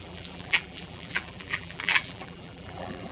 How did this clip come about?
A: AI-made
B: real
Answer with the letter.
A